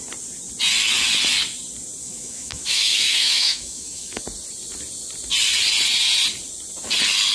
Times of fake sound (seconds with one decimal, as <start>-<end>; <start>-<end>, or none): 2.0-4.2